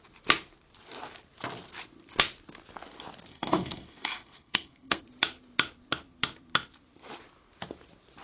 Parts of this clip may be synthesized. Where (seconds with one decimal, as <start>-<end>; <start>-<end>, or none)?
3.3-5.0